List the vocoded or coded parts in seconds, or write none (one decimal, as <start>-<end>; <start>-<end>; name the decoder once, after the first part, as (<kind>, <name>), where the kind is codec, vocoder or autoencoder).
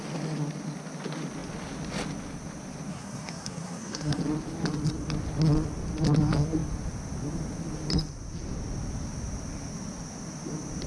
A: 2.9-4.2 (codec, SNAC)